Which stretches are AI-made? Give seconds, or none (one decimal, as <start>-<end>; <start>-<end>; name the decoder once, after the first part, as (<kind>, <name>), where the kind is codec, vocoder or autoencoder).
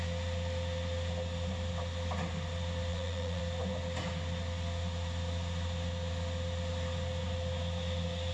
2.9-3.4 (vocoder, Vocos)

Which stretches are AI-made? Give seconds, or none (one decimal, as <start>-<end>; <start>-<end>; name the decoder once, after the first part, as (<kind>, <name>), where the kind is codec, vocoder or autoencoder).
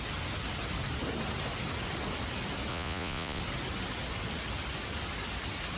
2.7-3.4 (vocoder, Vocos)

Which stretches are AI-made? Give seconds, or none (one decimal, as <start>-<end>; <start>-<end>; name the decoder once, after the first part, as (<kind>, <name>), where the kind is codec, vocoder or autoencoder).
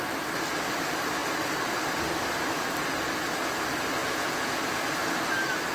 4.0-4.6 (vocoder, Vocos)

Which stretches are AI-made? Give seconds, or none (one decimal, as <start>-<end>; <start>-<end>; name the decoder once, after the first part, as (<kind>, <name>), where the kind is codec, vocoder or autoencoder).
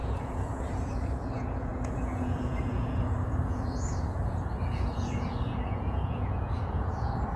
0.0-7.4 (vocoder, Vocos)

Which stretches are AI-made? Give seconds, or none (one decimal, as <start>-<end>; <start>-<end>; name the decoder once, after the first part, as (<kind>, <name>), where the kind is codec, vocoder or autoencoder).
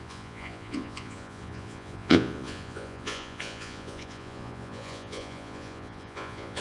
0.0-6.6 (vocoder, Vocos)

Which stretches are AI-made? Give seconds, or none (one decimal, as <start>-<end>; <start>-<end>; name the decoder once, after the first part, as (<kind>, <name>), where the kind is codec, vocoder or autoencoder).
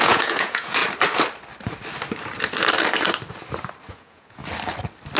0.0-0.8 (vocoder, Vocos); 3.9-4.4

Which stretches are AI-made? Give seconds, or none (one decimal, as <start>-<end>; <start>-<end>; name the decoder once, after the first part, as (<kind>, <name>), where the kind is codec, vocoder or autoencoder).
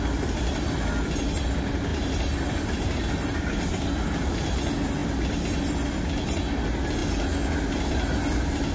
none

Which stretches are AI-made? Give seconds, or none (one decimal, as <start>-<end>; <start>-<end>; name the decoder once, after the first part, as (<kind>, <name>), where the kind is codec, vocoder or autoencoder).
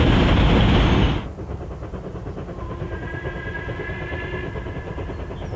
none